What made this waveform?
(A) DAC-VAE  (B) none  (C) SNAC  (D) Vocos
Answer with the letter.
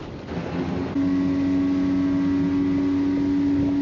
B